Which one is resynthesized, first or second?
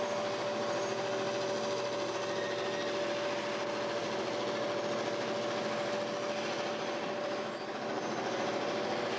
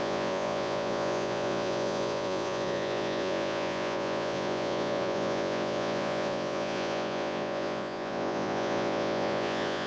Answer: second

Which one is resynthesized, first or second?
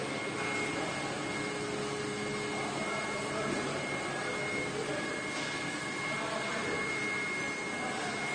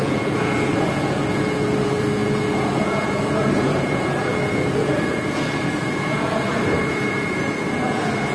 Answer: second